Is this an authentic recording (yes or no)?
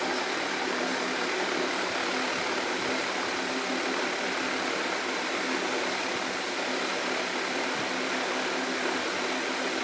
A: yes